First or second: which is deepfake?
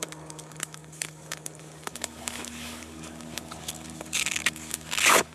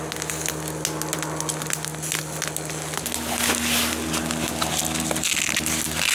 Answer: first